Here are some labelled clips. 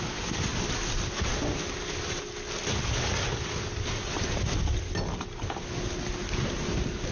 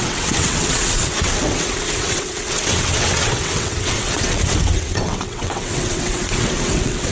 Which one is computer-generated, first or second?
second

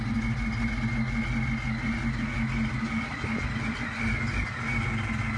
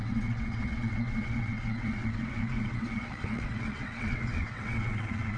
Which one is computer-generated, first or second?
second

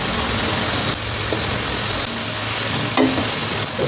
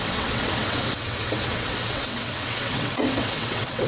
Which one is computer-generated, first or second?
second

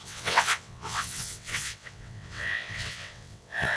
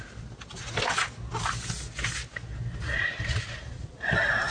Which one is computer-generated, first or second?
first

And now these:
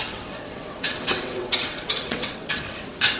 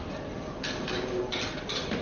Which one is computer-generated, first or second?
first